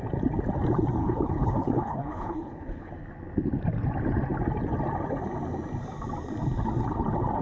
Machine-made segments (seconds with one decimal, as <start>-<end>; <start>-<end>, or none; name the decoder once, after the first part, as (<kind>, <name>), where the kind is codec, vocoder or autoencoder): 1.0-2.9 (codec, HILCodec)